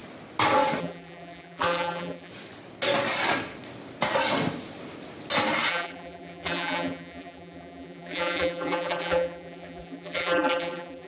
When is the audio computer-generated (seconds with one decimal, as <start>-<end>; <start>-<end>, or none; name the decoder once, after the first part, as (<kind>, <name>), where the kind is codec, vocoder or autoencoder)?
0.8-2.3 (vocoder, BigVGAN v2); 5.7-11.1